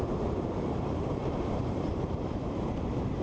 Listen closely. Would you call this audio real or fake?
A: fake